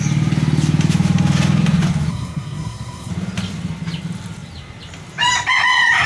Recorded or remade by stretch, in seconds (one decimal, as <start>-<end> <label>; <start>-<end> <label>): 0.0-2.1 recorded; 2.1-3.1 remade; 3.1-6.1 recorded